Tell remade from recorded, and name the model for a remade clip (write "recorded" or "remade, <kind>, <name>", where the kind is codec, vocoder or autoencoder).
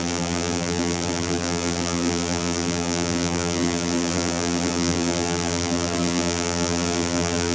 remade, vocoder, BigVGAN v2